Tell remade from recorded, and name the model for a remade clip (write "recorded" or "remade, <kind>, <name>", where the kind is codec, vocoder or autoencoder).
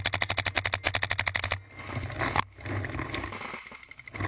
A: recorded